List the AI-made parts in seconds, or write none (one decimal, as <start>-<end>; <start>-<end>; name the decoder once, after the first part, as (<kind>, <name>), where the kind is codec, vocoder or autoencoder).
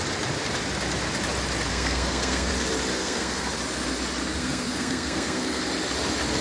1.7-2.5 (codec, SNAC); 2.9-3.5; 4.4-5.6